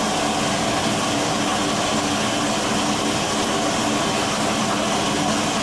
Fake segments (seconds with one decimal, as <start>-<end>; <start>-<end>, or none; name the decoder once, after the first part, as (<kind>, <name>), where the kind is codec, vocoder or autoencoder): none